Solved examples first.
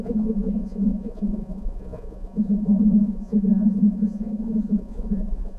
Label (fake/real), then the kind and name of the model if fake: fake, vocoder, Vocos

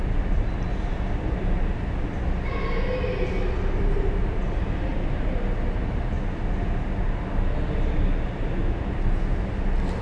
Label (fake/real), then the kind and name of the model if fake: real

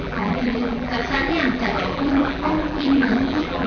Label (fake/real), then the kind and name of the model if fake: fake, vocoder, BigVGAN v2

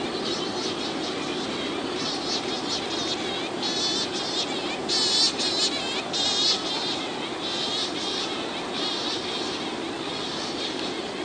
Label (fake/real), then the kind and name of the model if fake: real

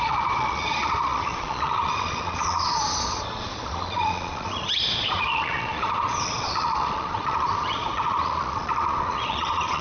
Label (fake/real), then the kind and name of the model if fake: fake, vocoder, Vocos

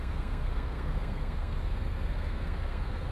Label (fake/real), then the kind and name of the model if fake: fake, codec, SNAC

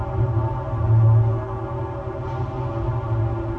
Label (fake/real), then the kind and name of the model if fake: real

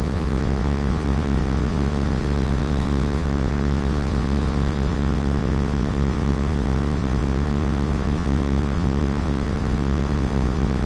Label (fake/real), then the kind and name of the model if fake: fake, vocoder, WaveNeXt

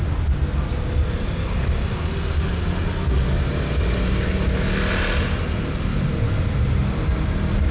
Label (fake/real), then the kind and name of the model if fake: real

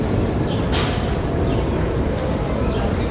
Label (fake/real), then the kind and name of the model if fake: real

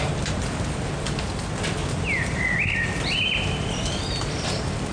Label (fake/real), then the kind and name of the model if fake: real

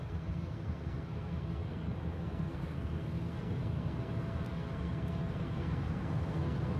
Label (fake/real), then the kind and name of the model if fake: fake, codec, SNAC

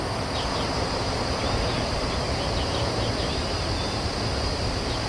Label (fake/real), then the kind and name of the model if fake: real